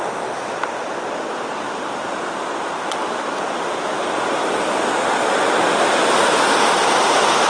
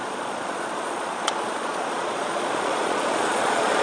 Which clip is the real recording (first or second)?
first